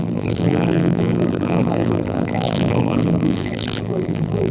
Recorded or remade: remade